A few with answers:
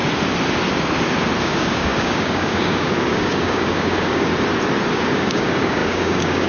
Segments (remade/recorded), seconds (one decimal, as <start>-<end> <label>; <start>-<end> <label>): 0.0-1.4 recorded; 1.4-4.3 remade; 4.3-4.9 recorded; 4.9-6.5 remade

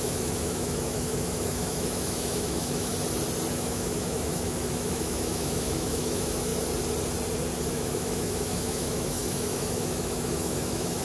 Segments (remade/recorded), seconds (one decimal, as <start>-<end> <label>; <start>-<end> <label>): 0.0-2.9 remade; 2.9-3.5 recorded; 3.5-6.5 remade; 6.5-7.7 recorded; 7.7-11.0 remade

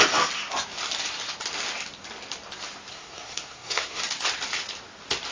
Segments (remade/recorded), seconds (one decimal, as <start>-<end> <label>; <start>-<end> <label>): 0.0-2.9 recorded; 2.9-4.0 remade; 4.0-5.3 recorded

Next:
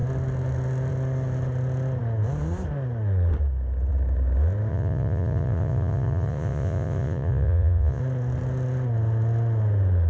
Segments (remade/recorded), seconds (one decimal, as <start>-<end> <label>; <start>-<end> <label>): 0.0-4.7 recorded; 4.7-8.0 remade; 8.0-10.1 recorded